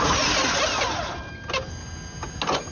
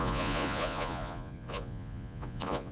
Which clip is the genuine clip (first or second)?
first